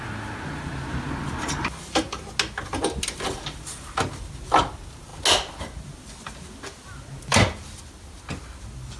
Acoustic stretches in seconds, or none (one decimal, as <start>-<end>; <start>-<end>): 0.0-9.0

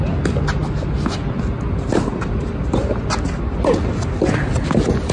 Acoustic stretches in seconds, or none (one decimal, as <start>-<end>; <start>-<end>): 0.0-5.1

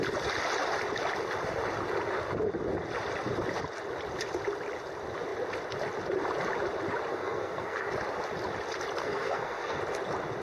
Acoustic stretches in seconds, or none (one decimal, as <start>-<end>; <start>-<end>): 0.0-7.1; 7.9-9.0; 9.8-10.4

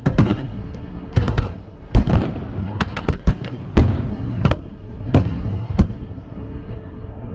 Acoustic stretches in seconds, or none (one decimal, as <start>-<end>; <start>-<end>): 2.1-2.6; 3.6-4.1

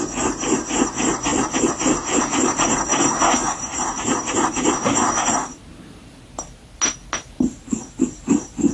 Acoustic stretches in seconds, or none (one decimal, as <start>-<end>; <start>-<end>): 0.0-8.7

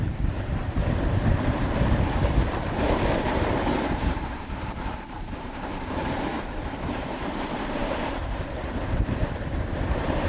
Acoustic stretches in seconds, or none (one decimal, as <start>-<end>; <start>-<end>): none